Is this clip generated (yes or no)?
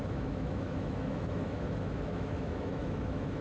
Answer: yes